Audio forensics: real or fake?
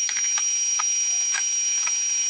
fake